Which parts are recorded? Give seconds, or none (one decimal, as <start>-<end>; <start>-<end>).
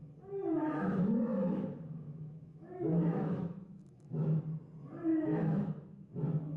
0.0-0.4; 4.4-5.1; 6.1-6.6